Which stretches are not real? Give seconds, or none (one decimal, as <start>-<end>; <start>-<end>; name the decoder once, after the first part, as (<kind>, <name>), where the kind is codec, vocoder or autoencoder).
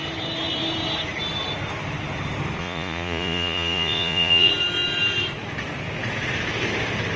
2.6-4.5 (vocoder, Vocos)